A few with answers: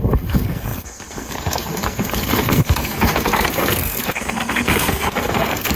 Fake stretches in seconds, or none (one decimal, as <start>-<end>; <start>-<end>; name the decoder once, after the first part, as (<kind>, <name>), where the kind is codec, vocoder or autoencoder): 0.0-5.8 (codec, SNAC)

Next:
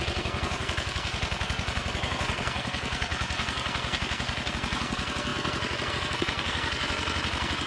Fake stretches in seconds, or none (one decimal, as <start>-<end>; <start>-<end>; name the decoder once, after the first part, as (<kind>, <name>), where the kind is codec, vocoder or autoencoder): 0.0-7.7 (codec, SNAC)

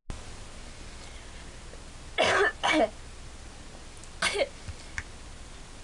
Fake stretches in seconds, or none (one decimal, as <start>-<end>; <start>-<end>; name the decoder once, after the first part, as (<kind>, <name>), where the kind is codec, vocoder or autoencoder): none